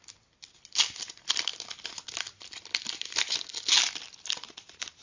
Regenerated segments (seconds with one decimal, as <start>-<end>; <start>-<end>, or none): none